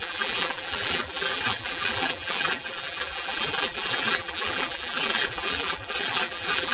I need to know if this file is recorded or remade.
remade